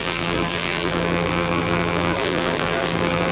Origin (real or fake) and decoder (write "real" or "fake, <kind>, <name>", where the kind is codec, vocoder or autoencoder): fake, vocoder, BigVGAN v2